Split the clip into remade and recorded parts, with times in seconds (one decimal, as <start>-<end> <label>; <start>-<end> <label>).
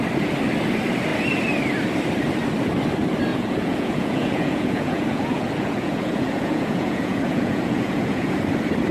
0.0-3.3 recorded; 3.3-8.4 remade; 8.4-8.9 recorded